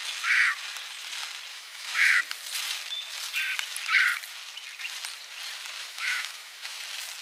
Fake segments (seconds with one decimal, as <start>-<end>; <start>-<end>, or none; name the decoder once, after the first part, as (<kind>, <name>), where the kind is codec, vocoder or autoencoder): 1.5-2.2 (autoencoder, DAC-VAE); 5.8-6.8